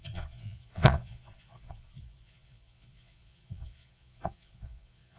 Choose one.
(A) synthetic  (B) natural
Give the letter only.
A